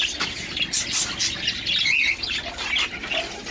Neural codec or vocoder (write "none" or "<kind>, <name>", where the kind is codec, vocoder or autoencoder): none